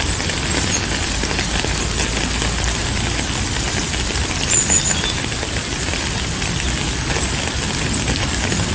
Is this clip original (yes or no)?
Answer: yes